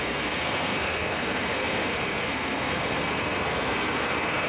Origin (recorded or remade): remade